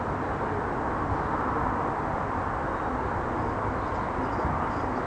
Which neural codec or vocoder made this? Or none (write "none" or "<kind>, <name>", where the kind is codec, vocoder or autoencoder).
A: none